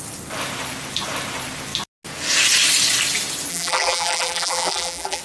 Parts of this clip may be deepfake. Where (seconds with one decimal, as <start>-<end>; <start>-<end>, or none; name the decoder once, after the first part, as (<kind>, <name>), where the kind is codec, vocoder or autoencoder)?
3.5-5.2 (vocoder, BigVGAN v2)